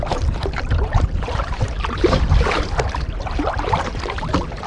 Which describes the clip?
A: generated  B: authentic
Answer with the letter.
A